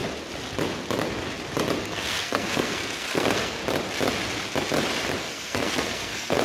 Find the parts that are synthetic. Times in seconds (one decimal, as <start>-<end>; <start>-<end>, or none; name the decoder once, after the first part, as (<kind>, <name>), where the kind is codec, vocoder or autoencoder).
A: 1.8-3.6 (codec, SNAC); 5.2-6.4